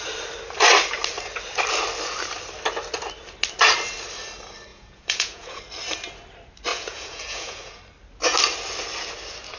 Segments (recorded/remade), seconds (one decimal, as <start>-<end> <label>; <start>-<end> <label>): 0.0-4.7 recorded; 4.7-5.6 remade; 5.6-6.7 recorded; 6.7-7.8 remade; 7.8-9.6 recorded